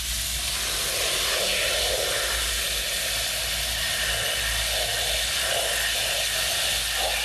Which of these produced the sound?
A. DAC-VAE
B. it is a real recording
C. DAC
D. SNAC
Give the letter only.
B